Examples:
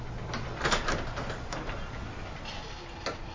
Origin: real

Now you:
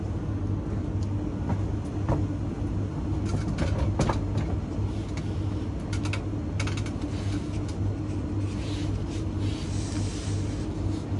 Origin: real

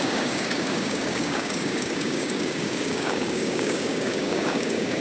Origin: fake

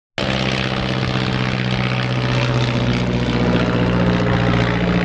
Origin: real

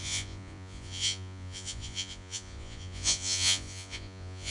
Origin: fake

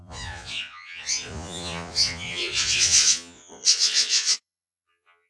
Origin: fake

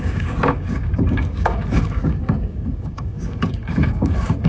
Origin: fake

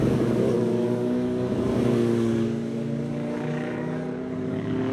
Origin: fake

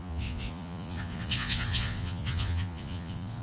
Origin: fake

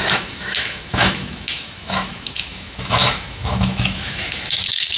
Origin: fake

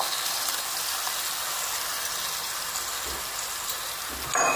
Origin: real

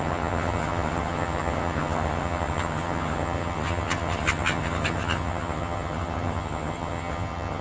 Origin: fake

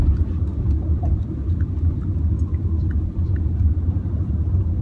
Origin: fake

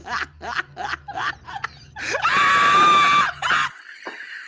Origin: real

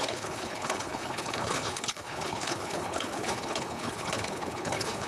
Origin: fake